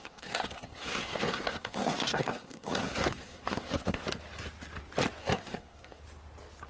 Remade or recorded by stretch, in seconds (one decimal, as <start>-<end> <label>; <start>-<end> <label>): 0.0-4.0 remade; 4.0-5.2 recorded; 5.2-6.0 remade; 6.0-6.7 recorded